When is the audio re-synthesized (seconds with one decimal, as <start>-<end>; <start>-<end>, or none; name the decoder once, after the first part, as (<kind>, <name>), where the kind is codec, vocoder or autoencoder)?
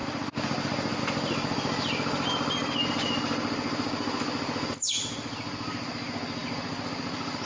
none